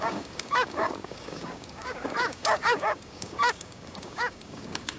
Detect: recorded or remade remade